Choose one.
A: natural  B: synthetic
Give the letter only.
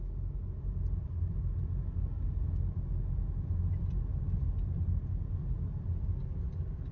A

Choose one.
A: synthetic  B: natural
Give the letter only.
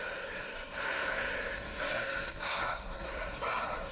A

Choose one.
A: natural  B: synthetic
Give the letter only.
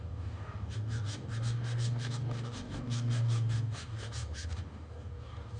B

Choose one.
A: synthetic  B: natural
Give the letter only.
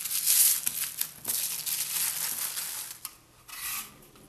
A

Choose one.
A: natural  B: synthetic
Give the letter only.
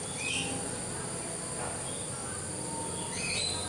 A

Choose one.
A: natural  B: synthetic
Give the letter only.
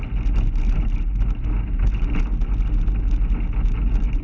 A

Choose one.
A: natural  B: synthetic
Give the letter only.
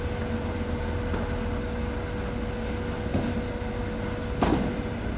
A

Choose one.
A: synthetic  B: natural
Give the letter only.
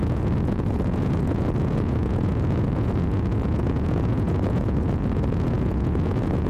A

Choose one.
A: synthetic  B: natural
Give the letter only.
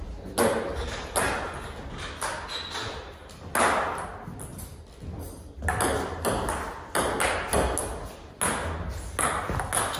B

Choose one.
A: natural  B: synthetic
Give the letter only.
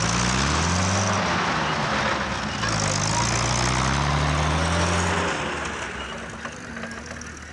A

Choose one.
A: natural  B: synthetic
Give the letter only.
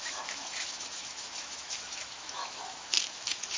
B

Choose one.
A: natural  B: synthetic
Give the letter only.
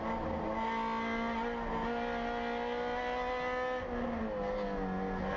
A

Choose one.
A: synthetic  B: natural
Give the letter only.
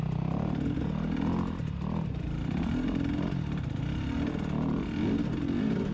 B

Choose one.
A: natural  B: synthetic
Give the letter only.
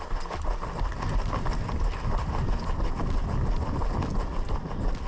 A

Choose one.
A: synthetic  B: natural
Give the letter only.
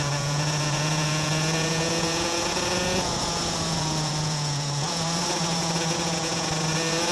A